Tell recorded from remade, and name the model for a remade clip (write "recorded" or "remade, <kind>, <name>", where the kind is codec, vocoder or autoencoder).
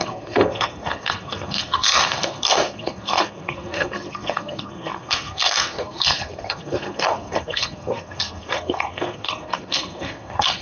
remade, codec, SNAC